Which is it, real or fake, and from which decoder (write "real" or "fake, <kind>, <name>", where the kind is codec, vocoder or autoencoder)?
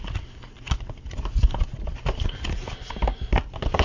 real